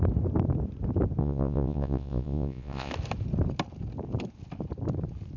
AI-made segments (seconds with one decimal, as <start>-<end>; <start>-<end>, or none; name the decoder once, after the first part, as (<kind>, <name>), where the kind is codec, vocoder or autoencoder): 1.2-2.9 (vocoder, Vocos)